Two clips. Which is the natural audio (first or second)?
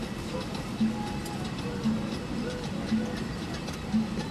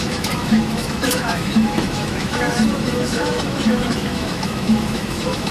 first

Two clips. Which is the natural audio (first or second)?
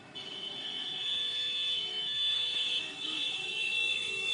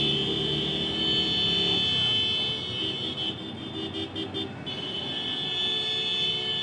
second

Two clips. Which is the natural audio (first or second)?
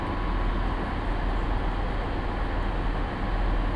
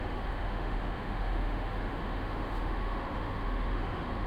first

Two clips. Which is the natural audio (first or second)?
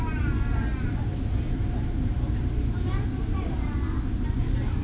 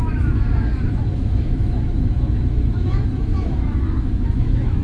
first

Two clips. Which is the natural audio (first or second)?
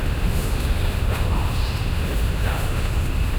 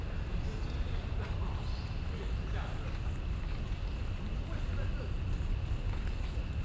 second